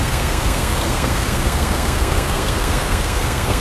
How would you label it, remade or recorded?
remade